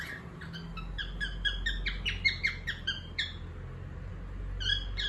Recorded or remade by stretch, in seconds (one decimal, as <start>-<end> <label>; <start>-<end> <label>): 0.0-5.1 recorded